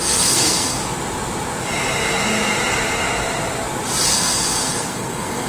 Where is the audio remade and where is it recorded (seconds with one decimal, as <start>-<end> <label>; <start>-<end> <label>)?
0.0-0.8 remade; 0.8-4.1 recorded; 4.1-5.5 remade